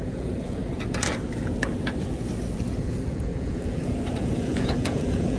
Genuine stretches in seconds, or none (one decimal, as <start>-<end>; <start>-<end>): 0.6-2.8